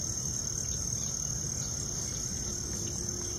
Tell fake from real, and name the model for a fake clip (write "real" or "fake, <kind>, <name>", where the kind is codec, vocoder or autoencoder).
real